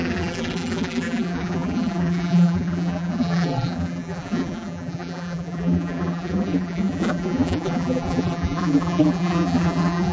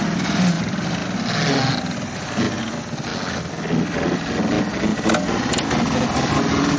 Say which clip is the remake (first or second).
first